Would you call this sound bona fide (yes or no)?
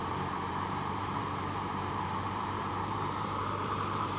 no